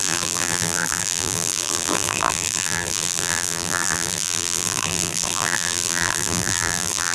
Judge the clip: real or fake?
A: fake